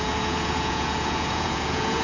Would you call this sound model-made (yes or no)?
yes